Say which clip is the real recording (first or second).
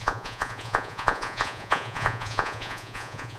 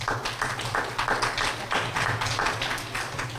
second